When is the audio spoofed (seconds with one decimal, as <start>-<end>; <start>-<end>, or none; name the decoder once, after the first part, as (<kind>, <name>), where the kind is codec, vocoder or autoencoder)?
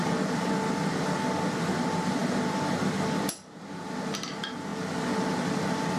none